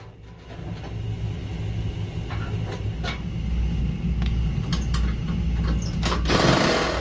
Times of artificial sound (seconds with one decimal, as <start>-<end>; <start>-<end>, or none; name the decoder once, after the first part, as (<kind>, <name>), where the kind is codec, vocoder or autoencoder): none